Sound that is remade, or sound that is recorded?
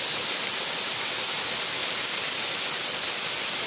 recorded